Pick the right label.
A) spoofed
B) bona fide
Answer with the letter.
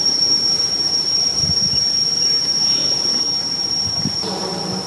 A